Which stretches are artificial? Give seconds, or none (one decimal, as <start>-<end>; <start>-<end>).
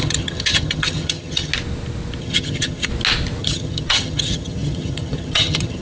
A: 0.0-1.5; 2.2-2.9; 3.4-5.8